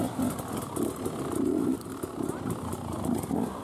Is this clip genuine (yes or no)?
yes